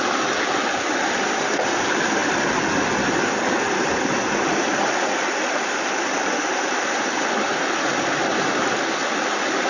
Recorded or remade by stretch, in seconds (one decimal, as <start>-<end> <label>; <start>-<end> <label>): 0.0-9.7 recorded

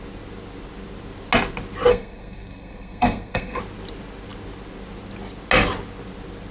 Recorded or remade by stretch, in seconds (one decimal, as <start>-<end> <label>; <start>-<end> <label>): 0.0-1.9 recorded; 1.9-3.6 remade; 3.6-6.5 recorded

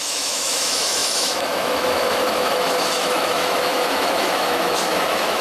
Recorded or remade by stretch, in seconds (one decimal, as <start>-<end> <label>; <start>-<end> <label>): 0.0-5.4 remade

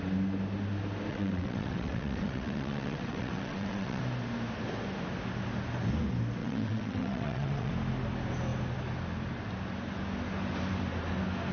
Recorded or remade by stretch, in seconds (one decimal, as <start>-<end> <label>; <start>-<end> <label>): 0.0-1.1 recorded; 1.1-4.0 remade; 4.0-6.4 recorded; 6.4-7.7 remade; 7.7-11.5 recorded

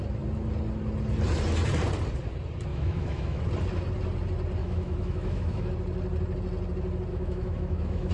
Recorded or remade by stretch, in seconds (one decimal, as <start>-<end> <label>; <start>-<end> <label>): 0.0-2.7 recorded; 2.7-3.4 remade; 3.4-4.6 recorded; 4.6-5.7 remade; 5.7-7.1 recorded; 7.1-8.1 remade